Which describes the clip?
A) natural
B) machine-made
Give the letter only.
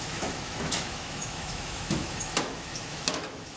B